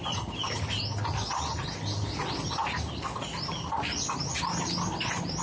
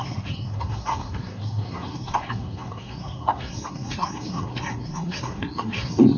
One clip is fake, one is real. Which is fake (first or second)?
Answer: second